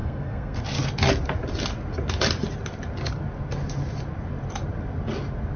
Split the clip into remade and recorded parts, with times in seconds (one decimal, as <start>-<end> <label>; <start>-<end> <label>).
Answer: 0.0-0.6 remade; 0.6-5.6 recorded